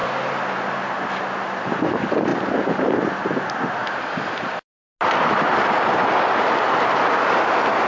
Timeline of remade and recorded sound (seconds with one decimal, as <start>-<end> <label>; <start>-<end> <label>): 0.0-2.3 recorded; 2.3-3.4 remade; 3.4-7.9 recorded

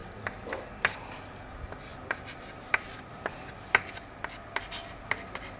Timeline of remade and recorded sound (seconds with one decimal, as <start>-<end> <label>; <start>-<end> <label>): 0.0-1.9 recorded; 1.9-3.9 remade; 3.9-5.6 recorded

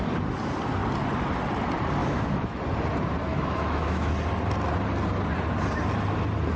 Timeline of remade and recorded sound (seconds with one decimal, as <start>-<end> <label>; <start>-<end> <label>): 0.0-2.0 recorded; 2.0-2.6 remade; 2.6-3.3 recorded; 3.3-4.1 remade; 4.1-6.6 recorded

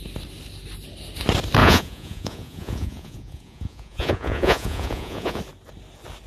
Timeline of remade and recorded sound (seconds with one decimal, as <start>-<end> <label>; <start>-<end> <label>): 0.0-1.6 recorded; 1.6-5.4 remade; 5.4-6.3 recorded

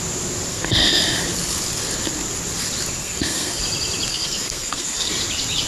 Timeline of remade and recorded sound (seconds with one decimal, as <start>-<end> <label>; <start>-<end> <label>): 0.0-0.5 recorded; 0.5-1.0 remade; 1.0-3.0 recorded; 3.0-3.6 remade; 3.6-4.1 recorded; 4.1-5.1 remade; 5.1-5.7 recorded

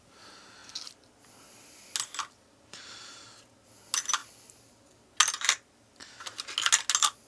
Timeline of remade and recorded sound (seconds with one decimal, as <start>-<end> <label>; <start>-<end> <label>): 0.0-7.3 recorded

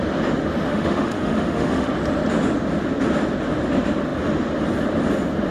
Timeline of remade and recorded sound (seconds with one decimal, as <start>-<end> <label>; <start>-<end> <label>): 0.0-0.7 recorded; 0.7-1.9 remade; 1.9-5.5 recorded

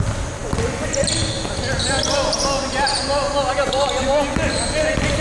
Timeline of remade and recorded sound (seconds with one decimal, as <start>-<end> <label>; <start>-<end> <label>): 0.0-5.2 recorded